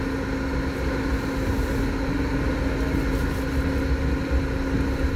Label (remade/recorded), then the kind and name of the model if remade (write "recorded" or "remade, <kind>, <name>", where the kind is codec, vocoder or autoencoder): recorded